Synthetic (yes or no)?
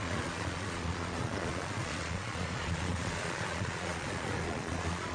yes